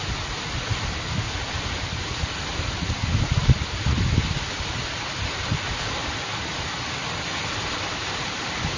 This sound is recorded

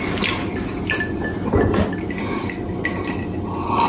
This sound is recorded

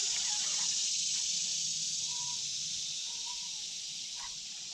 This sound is recorded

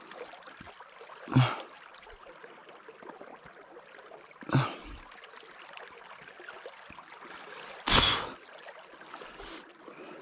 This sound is recorded